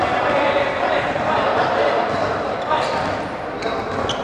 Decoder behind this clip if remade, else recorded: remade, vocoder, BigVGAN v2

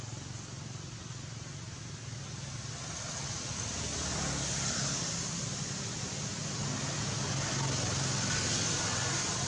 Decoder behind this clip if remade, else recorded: recorded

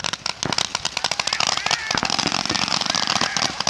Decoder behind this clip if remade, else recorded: recorded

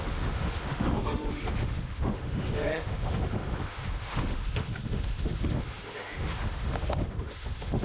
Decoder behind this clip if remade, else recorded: remade, autoencoder, DAC-VAE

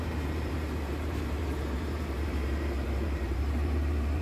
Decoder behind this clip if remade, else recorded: remade, vocoder, BigVGAN v2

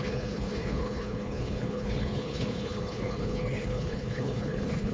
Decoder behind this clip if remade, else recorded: remade, codec, HILCodec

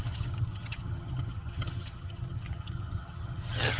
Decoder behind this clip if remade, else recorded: remade, vocoder, HiFi-GAN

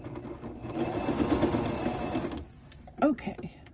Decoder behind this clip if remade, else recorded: recorded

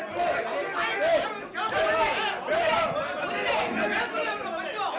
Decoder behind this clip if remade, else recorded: recorded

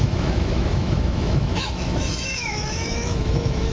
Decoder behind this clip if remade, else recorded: remade, autoencoder, DAC-VAE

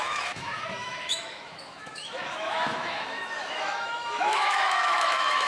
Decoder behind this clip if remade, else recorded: remade, autoencoder, DAC-VAE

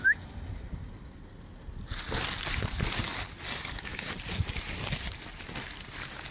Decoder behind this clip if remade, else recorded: recorded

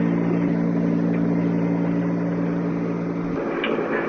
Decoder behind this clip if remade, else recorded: recorded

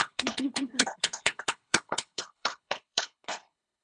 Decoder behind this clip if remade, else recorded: remade, codec, HILCodec